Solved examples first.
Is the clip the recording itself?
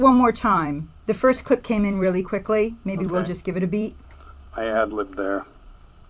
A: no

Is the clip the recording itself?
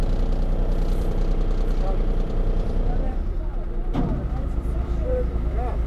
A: no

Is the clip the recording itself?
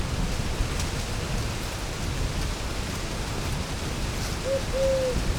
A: yes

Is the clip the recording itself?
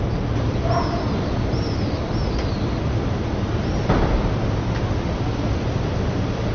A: yes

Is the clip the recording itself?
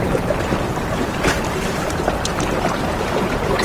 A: no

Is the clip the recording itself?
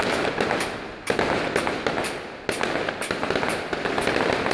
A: yes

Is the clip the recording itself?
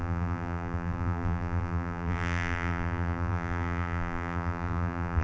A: no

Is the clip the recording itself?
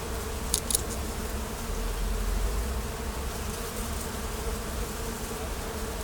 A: yes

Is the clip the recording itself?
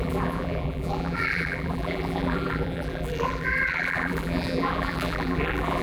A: no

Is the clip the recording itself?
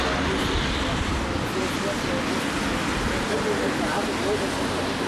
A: yes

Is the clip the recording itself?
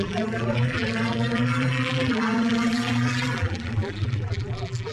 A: no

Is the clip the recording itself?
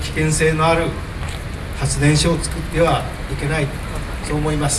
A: yes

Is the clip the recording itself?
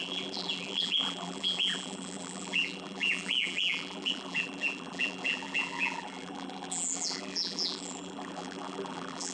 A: no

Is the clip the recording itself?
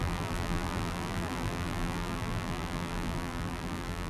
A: no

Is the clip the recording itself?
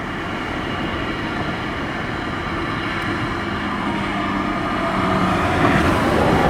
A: yes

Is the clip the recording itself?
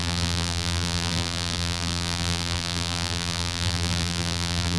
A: no